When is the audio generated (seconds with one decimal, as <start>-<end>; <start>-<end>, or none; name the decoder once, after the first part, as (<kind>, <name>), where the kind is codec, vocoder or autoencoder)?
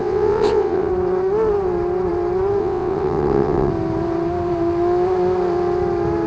0.0-0.9 (vocoder, WaveNeXt); 2.6-3.7